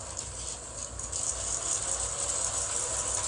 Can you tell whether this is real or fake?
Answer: real